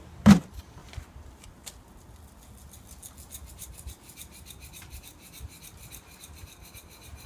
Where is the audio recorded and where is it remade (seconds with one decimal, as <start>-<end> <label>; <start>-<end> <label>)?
0.0-0.8 remade; 0.8-3.5 recorded; 3.5-7.3 remade